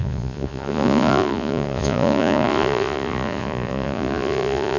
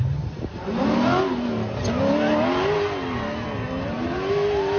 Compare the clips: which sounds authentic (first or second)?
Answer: second